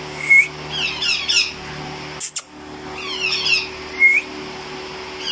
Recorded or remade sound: recorded